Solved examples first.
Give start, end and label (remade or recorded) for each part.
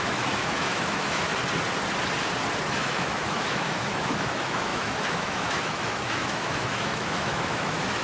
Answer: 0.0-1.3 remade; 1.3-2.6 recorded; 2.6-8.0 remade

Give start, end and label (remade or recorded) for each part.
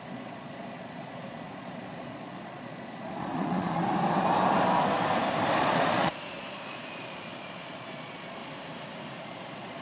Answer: 0.0-3.8 remade; 3.8-5.6 recorded; 5.6-8.4 remade; 8.4-9.2 recorded; 9.2-9.8 remade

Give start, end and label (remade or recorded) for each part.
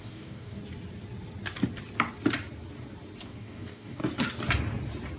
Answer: 0.0-0.6 remade; 0.6-3.2 recorded; 3.2-4.0 remade; 4.0-5.2 recorded